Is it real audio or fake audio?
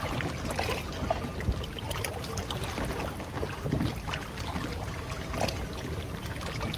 real